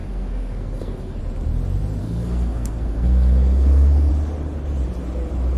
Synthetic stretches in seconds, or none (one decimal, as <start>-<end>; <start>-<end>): 0.0-1.2; 2.0-4.1